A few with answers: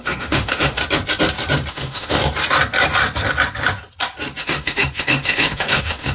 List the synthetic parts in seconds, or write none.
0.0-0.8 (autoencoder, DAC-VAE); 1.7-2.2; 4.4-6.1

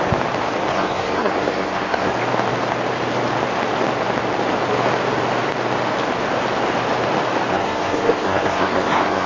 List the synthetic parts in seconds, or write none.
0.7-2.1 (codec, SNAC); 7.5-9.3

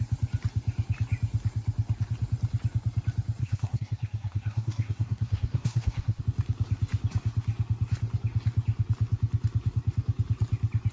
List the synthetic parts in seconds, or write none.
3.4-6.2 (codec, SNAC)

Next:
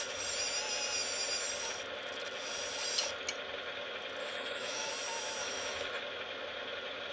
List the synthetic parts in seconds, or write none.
4.2-4.9 (autoencoder, DAC-VAE); 5.4-6.0